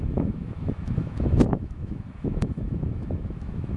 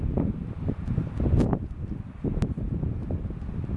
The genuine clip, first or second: second